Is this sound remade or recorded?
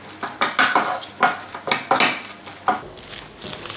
recorded